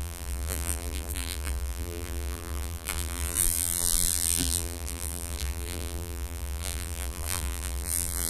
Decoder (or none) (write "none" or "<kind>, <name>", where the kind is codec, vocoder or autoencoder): vocoder, BigVGAN v2